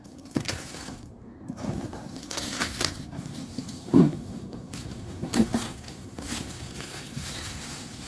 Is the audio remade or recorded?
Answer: remade